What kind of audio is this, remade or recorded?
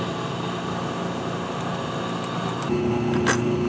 recorded